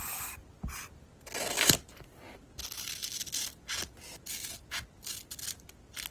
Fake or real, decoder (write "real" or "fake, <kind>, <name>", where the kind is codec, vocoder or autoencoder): real